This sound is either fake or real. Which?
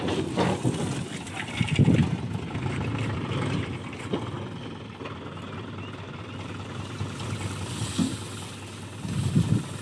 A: real